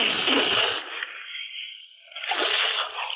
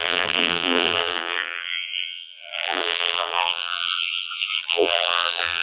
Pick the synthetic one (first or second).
second